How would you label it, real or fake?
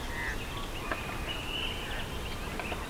real